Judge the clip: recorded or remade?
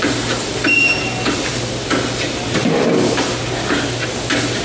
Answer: remade